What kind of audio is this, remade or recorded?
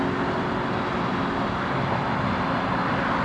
recorded